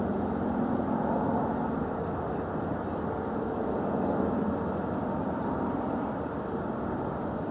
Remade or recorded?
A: recorded